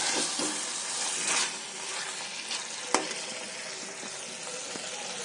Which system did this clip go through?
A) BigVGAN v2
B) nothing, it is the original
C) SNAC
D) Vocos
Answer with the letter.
B